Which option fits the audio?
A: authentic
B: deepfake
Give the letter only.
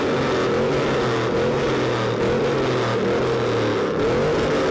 A